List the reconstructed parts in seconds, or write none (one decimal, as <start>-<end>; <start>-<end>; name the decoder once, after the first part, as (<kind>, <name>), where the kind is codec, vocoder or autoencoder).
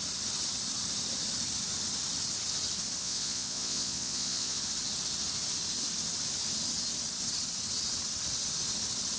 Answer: 3.0-4.6 (vocoder, Vocos)